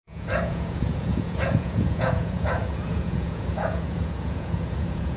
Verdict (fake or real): fake